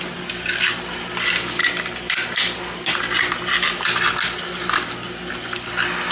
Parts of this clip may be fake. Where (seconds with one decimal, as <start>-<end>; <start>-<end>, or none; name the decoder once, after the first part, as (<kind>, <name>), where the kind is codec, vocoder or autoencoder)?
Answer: none